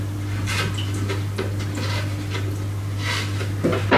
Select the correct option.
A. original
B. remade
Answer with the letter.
A